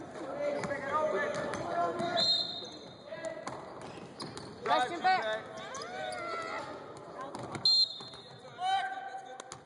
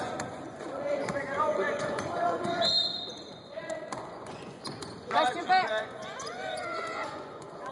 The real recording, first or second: first